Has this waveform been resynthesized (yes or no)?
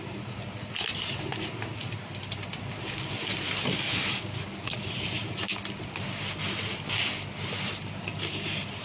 no